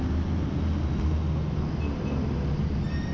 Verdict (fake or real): real